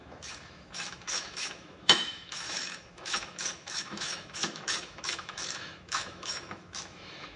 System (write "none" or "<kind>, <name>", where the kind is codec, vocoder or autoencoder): autoencoder, DAC-VAE